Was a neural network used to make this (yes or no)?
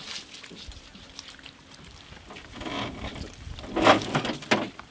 no